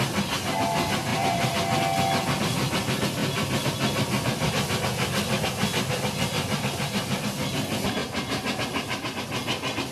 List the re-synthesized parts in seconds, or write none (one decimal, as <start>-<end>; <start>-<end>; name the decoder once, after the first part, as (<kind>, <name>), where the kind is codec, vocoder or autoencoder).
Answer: 1.1-1.8 (vocoder, BigVGAN v2)